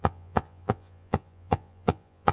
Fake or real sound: fake